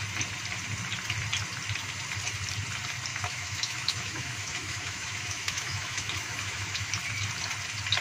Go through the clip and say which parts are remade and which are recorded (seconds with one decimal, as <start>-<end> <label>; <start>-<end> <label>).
0.0-3.1 recorded; 3.1-6.9 remade; 6.9-8.0 recorded